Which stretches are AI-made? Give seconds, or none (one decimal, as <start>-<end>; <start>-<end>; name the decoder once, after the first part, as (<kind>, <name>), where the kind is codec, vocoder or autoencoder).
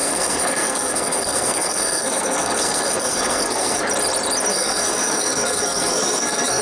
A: 0.0-3.8 (codec, SNAC); 4.5-6.6